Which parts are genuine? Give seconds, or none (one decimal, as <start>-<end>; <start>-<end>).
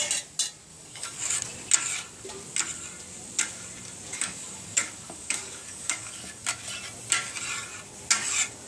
0.0-0.7; 1.3-4.1; 6.4-8.7